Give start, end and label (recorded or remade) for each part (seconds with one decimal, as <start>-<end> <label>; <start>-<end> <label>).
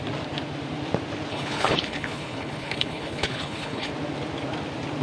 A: 0.0-1.3 recorded; 1.3-3.9 remade; 3.9-5.0 recorded